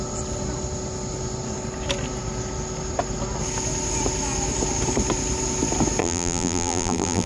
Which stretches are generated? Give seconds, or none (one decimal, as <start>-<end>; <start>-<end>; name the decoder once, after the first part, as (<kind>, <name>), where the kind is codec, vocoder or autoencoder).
6.0-7.3 (vocoder, BigVGAN v2)